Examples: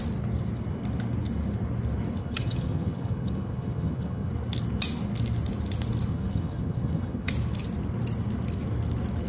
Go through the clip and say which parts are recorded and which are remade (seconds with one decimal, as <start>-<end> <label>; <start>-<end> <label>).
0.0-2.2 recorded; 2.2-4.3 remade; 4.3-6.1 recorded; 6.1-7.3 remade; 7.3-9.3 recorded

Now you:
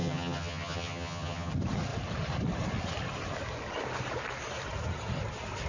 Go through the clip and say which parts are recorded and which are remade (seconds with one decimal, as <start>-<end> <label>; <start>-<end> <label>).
0.0-1.5 remade; 1.5-5.7 recorded

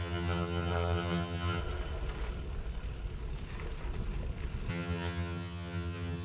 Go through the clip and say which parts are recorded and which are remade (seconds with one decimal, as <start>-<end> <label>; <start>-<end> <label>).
0.0-1.6 remade; 1.6-4.7 recorded; 4.7-6.2 remade

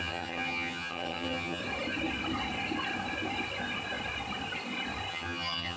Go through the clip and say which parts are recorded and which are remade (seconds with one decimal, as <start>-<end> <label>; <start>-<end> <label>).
0.0-1.6 remade; 1.6-5.1 recorded; 5.1-5.8 remade

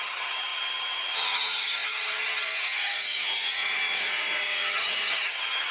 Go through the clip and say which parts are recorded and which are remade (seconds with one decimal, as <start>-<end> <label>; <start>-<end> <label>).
0.0-5.7 remade

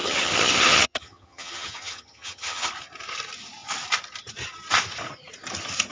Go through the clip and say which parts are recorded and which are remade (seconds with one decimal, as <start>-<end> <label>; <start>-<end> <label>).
0.0-2.7 remade; 2.7-5.9 recorded

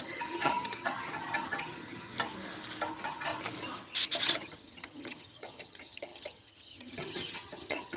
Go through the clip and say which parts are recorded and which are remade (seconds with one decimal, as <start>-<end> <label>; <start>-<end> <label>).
0.0-2.1 remade; 2.1-2.9 recorded; 2.9-3.3 remade; 3.3-4.2 recorded; 4.2-8.0 remade

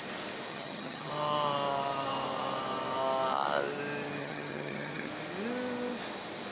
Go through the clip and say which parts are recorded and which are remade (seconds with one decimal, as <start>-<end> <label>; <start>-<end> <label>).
0.0-0.5 recorded; 0.5-1.1 remade; 1.1-4.2 recorded; 4.2-5.1 remade; 5.1-6.5 recorded